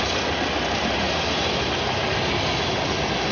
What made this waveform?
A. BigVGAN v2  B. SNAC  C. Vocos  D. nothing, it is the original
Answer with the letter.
D